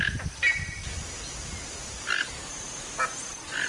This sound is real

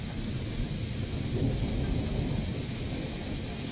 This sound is real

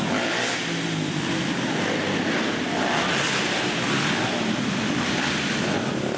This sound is real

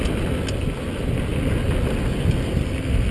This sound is real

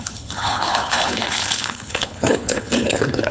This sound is fake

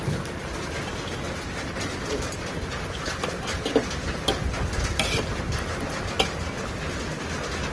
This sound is real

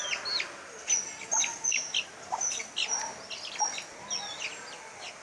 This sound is real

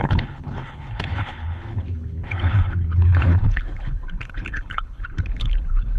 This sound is fake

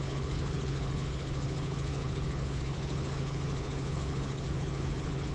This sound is fake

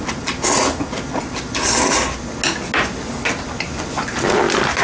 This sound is real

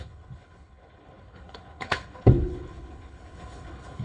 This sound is fake